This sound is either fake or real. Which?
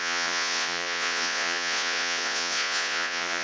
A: fake